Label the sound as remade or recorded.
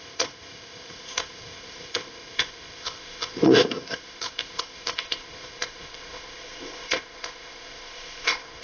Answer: remade